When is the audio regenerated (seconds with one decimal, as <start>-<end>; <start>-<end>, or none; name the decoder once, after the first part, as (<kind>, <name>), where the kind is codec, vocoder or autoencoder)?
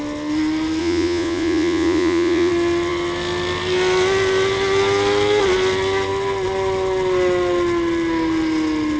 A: 0.8-2.5 (vocoder, Vocos)